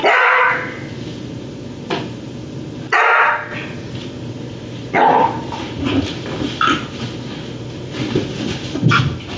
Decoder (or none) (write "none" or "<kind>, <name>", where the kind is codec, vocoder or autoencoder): none